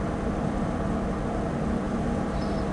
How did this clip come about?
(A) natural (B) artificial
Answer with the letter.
B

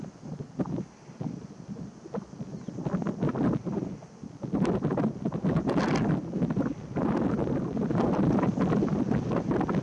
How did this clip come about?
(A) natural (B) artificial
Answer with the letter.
A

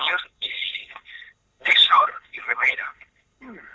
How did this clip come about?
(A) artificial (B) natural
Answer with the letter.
A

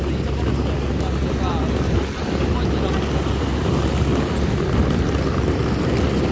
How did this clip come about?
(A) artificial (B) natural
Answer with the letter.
B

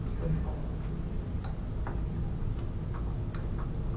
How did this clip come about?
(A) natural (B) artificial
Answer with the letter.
A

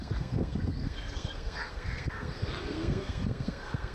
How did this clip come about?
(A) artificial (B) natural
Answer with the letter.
A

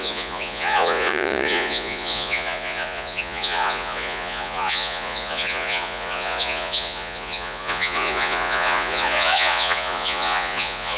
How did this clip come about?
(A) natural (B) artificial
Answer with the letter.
B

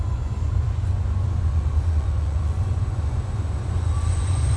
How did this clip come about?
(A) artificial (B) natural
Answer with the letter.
A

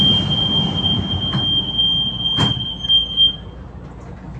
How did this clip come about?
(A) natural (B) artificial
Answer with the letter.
A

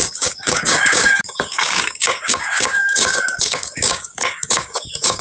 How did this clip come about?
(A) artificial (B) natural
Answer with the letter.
A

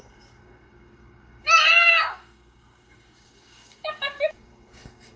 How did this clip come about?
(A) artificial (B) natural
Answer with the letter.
A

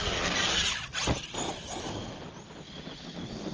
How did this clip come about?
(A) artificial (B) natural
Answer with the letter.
B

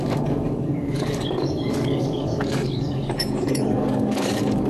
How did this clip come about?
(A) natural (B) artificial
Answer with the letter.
B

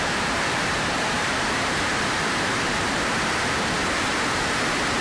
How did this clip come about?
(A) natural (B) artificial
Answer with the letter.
B